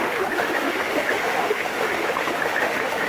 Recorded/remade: remade